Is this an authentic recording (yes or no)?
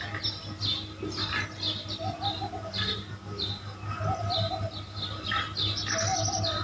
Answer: yes